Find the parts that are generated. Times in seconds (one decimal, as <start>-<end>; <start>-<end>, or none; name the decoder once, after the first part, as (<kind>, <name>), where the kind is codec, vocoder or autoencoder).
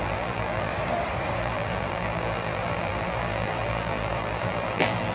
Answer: 0.0-0.7 (vocoder, BigVGAN v2); 1.4-5.1